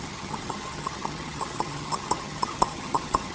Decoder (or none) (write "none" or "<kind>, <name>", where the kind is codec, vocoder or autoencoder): vocoder, HiFi-GAN